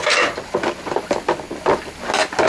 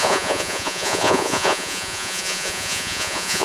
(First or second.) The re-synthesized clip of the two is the second